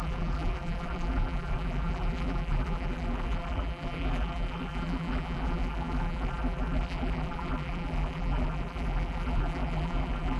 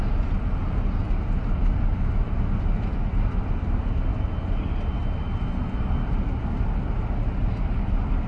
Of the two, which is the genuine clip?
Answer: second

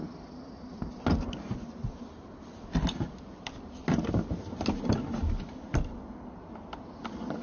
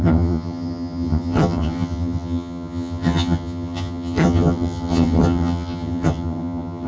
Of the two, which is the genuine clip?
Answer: first